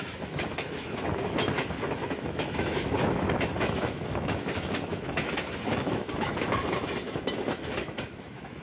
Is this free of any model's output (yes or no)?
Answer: no